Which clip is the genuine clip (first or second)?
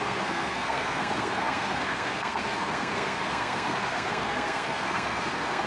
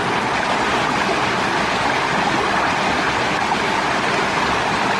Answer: second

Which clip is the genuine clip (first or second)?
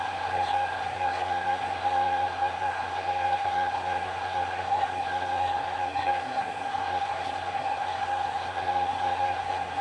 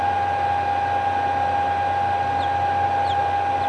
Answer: second